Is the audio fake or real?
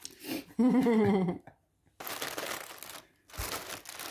real